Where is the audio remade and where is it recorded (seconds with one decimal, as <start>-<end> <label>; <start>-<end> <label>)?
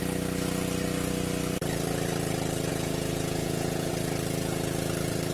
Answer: 0.0-2.7 recorded; 2.7-3.9 remade; 3.9-5.3 recorded